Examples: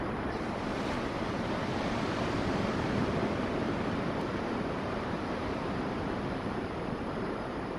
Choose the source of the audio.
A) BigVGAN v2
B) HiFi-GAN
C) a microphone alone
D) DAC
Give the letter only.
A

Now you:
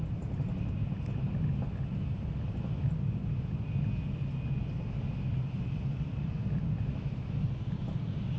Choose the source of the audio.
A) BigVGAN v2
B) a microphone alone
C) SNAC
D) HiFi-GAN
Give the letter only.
B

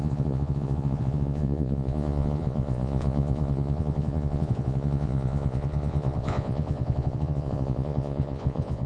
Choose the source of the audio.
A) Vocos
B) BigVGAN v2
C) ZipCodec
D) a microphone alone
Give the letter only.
A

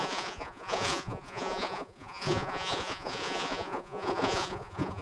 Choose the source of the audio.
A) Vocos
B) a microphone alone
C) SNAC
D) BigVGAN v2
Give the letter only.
A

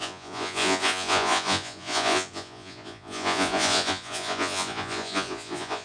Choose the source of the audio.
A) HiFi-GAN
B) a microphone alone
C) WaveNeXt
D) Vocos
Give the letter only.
D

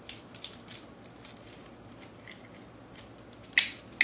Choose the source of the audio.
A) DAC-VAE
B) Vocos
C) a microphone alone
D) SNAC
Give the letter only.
C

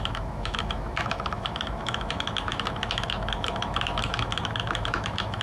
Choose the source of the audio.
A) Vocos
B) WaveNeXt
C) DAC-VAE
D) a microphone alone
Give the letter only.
C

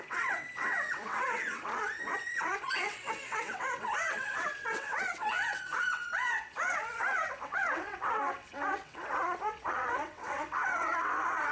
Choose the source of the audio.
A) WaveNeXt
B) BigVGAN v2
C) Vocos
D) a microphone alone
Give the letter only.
A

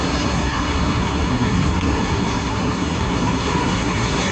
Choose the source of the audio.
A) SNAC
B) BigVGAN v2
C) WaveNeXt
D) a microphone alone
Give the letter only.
A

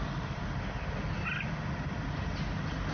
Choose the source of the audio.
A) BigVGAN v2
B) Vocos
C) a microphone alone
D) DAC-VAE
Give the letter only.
C